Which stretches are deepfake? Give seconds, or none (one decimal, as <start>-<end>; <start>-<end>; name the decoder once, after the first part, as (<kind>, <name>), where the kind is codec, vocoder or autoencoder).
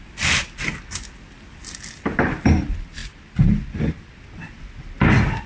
0.0-3.0 (vocoder, BigVGAN v2); 4.5-5.5